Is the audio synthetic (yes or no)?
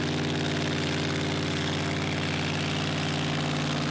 no